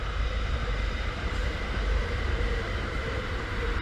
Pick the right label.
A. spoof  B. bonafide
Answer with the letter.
A